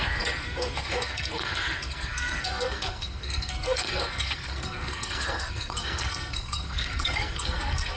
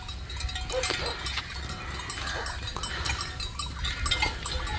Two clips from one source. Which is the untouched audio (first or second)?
second